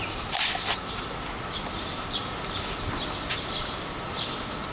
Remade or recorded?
recorded